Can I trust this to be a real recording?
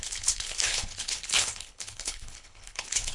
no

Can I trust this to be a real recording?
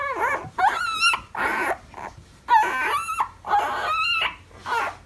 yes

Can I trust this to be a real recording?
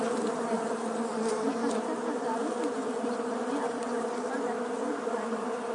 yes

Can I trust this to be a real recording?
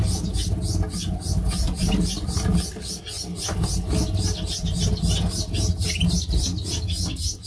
yes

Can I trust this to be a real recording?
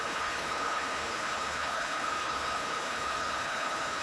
no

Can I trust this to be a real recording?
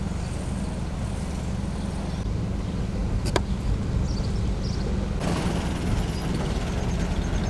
yes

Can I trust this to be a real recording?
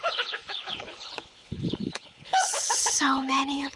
no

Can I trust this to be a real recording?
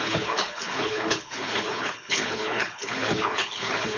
no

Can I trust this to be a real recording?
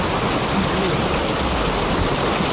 yes